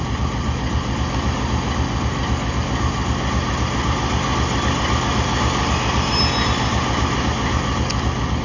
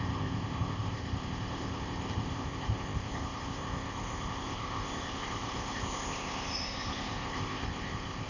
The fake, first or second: second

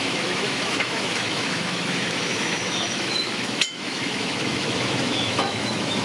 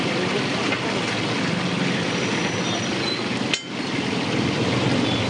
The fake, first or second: first